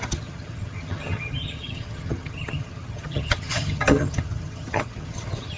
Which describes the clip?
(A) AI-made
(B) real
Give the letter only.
A